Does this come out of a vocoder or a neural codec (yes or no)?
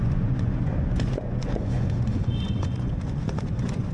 yes